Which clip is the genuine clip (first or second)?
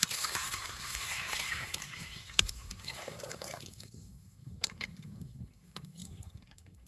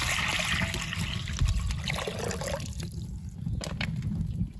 second